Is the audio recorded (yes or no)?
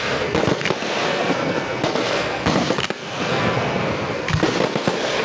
no